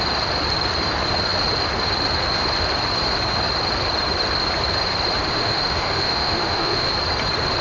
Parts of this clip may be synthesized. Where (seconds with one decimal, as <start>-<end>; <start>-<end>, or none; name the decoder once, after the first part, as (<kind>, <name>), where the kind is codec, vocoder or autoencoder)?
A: 5.3-6.9 (autoencoder, DAC-VAE)